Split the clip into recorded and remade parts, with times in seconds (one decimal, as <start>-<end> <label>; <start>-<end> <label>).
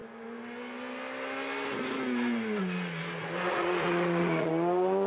0.0-3.5 recorded; 3.5-4.5 remade; 4.5-5.1 recorded